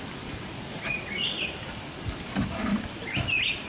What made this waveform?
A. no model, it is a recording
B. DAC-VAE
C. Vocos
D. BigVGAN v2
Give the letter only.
D